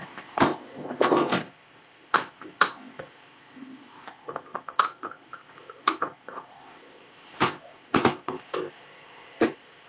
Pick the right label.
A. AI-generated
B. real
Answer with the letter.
A